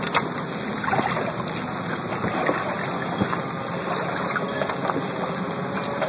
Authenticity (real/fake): real